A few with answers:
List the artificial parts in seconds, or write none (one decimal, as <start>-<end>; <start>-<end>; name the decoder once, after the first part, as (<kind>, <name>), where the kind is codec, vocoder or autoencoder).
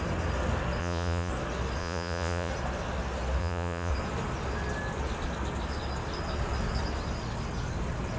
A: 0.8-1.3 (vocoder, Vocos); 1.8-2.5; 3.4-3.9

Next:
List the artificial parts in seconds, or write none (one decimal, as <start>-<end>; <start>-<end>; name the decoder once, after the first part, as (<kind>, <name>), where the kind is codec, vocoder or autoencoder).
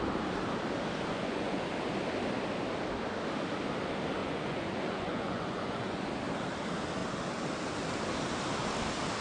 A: 1.1-1.7 (vocoder, Vocos); 4.2-6.0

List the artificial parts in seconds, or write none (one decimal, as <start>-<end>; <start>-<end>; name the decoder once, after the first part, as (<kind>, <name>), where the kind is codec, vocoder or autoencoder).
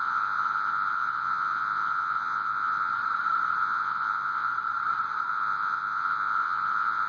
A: 0.0-2.9 (vocoder, Vocos); 3.6-4.5; 5.3-7.1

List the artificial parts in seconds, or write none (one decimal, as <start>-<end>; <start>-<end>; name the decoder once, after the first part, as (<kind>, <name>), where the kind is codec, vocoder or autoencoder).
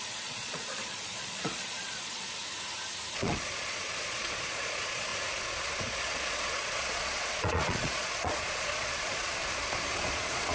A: 0.0-2.4 (vocoder, Vocos); 3.1-5.1; 5.7-9.4; 10.1-10.5